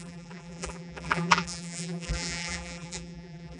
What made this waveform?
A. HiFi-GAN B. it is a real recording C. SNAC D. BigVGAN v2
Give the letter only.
D